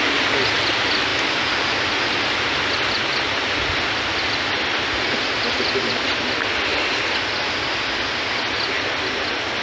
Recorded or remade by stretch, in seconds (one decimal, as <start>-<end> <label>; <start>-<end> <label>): 0.0-9.6 recorded